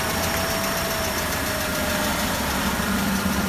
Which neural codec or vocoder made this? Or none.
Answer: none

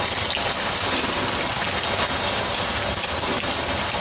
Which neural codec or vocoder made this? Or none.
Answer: none